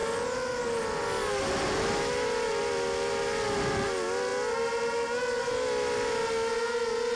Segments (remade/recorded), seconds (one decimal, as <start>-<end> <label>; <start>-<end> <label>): 0.0-7.2 recorded